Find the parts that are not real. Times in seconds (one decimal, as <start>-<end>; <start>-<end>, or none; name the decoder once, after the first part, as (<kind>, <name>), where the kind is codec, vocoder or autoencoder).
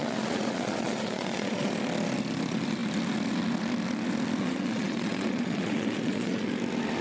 0.0-1.7 (vocoder, Vocos); 4.4-6.5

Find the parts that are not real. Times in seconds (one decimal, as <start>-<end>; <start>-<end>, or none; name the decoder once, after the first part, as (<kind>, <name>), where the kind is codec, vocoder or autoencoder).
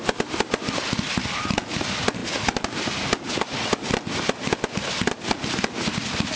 none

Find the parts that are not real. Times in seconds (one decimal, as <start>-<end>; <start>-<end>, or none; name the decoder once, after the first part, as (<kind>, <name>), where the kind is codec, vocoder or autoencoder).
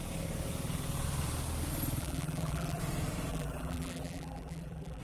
2.0-2.8 (vocoder, BigVGAN v2); 3.3-5.0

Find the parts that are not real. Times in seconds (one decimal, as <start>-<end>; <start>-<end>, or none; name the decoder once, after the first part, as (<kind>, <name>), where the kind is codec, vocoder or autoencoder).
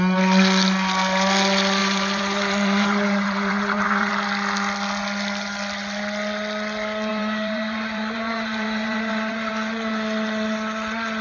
1.8-4.1 (vocoder, BigVGAN v2); 7.1-9.5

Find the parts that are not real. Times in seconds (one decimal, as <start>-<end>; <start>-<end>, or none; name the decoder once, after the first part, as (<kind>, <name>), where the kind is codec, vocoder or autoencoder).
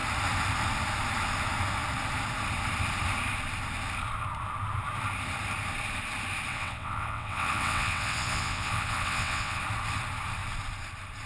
6.5-9.6 (vocoder, WaveNeXt)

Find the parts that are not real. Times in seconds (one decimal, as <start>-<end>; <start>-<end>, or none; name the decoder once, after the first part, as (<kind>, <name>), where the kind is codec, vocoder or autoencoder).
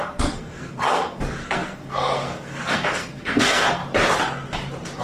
0.0-3.8 (codec, SNAC)